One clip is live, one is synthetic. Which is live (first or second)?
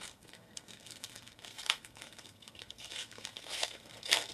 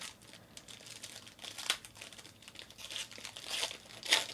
second